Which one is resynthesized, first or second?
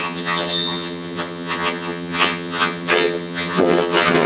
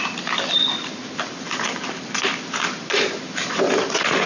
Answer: first